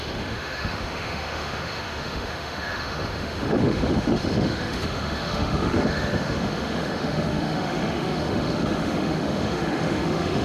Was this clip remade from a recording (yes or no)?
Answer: yes